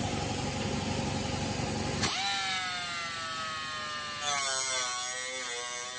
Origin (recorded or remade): recorded